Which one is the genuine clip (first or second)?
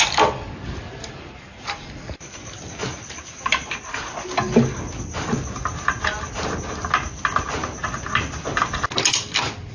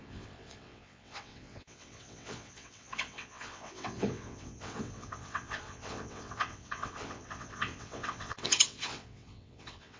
first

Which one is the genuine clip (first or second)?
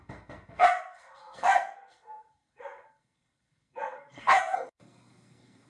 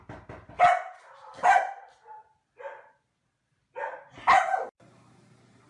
second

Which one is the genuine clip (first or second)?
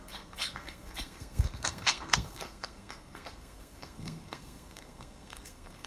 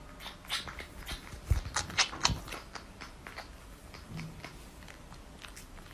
second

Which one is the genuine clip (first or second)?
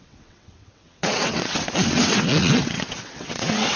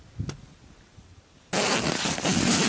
second